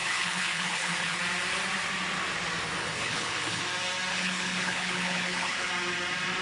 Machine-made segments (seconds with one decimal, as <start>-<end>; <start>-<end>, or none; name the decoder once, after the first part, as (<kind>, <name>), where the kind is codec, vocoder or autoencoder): 0.0-1.2 (codec, HILCodec); 2.8-3.6; 4.1-5.7